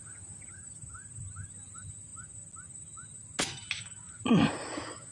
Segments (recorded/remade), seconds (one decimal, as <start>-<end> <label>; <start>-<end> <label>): 0.0-5.1 recorded